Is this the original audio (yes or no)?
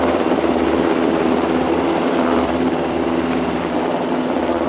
no